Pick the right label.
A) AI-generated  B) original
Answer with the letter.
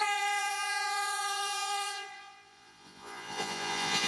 A